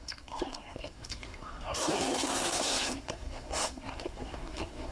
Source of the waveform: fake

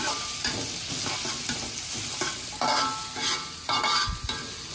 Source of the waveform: real